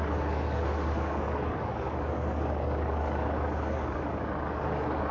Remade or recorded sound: remade